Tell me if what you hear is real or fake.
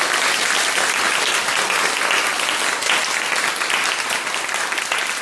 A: real